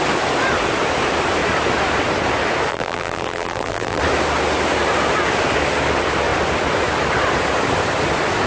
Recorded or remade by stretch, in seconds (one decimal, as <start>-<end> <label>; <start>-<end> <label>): 0.0-2.7 recorded; 2.7-4.0 remade; 4.0-8.5 recorded